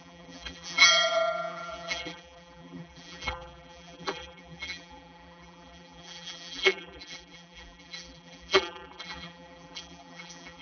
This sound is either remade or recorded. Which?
remade